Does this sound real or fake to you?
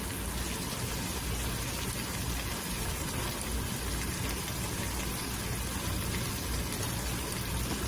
real